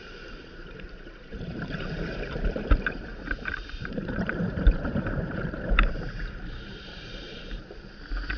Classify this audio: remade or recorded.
remade